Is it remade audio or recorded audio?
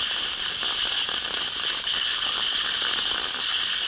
recorded